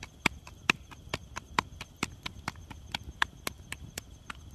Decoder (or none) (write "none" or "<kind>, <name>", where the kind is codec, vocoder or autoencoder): none